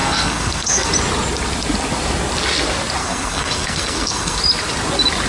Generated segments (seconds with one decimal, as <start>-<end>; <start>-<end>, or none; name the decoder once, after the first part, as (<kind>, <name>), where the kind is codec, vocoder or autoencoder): 0.0-0.9 (codec, SNAC); 3.0-4.4